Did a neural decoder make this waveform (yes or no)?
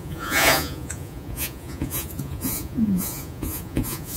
yes